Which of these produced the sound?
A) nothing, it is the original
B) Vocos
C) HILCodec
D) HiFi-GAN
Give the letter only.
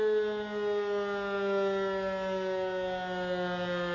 A